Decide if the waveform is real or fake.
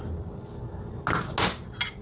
real